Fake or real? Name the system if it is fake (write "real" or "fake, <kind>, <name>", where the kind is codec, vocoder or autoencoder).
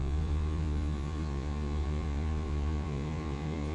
fake, vocoder, Vocos